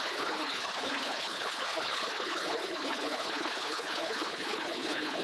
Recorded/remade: remade